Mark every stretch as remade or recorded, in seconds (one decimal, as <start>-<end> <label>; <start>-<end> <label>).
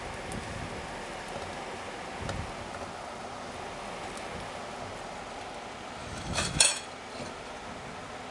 0.0-6.0 recorded; 6.0-6.8 remade; 6.8-8.3 recorded